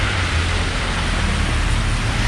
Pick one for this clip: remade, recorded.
recorded